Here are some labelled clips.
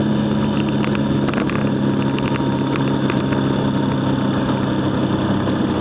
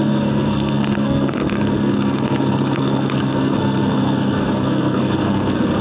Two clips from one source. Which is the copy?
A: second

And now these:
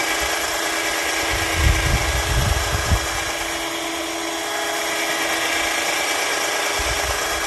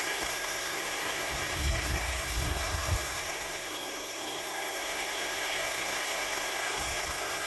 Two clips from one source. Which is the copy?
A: second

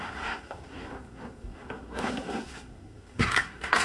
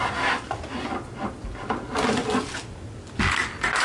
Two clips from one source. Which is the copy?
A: first